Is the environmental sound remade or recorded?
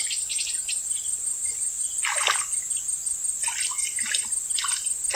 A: recorded